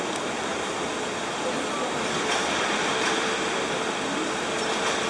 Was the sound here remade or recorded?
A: recorded